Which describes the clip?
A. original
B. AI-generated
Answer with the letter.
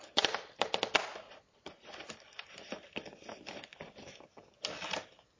A